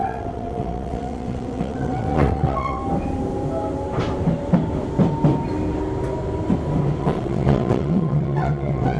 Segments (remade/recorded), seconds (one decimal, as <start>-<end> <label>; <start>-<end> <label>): 0.0-2.8 remade; 2.8-7.0 recorded; 7.0-9.0 remade